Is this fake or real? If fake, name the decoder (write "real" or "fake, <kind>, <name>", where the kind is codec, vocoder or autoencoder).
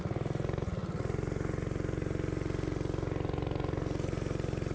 real